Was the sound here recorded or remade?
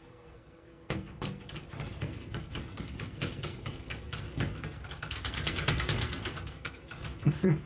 remade